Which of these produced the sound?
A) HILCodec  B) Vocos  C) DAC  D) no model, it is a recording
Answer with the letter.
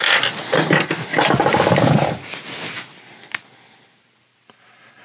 D